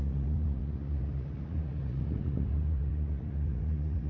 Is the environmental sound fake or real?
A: fake